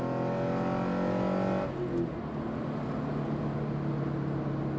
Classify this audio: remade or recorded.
recorded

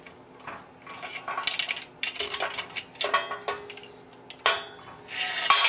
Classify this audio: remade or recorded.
recorded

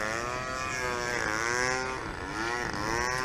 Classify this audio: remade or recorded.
recorded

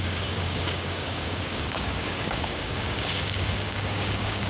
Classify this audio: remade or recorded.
remade